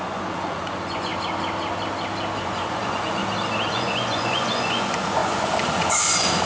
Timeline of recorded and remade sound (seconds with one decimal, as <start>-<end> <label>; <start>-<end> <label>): 0.0-1.1 remade; 1.1-2.4 recorded; 2.4-3.2 remade; 3.2-3.7 recorded; 3.7-6.5 remade